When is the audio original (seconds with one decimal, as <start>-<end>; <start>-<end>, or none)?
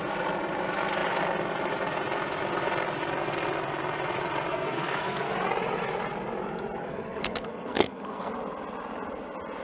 0.0-4.5; 5.3-6.8; 8.3-9.6